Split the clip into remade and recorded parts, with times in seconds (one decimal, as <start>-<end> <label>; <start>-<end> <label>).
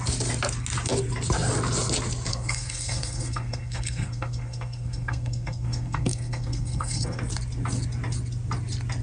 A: 0.0-2.3 recorded; 2.3-7.2 remade; 7.2-9.0 recorded